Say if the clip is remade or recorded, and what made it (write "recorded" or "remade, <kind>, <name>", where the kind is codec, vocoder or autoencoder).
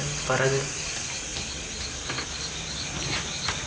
recorded